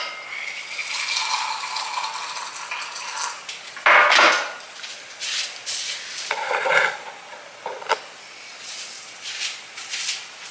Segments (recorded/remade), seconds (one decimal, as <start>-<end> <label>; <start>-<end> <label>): 0.0-10.5 recorded